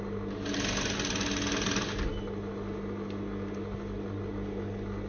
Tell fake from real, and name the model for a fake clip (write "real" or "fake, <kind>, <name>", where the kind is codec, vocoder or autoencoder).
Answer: real